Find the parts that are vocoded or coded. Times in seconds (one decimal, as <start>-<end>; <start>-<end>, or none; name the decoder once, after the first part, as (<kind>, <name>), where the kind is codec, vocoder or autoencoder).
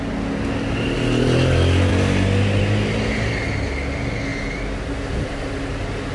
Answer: none